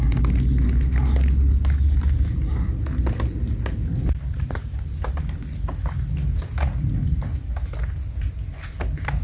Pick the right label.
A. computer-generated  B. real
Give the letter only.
B